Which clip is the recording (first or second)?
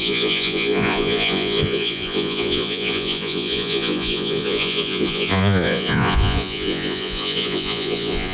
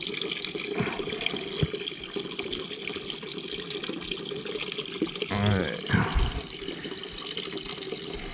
second